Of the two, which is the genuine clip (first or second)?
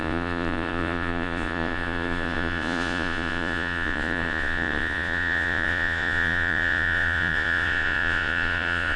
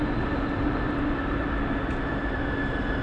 second